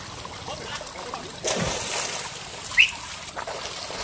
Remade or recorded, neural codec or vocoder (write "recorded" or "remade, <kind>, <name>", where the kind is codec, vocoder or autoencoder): recorded